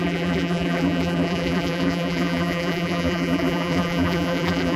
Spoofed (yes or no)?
yes